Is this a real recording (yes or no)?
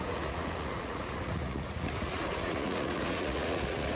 no